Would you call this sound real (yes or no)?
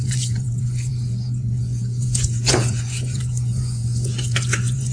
no